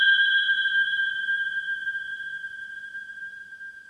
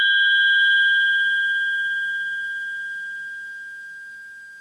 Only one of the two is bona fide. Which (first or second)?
second